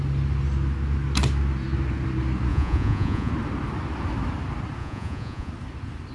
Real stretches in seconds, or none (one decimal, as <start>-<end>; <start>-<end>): 0.0-2.5; 3.3-4.8; 5.5-6.1